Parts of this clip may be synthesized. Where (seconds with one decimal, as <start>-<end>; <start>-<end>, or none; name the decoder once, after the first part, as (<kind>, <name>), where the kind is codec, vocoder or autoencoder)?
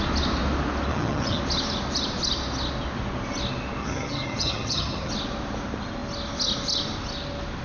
0.9-1.4 (vocoder, HiFi-GAN); 3.8-5.1